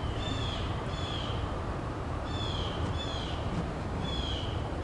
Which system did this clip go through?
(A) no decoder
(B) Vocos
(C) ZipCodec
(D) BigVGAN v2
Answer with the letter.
D